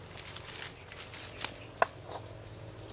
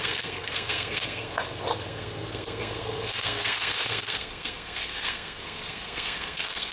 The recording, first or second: first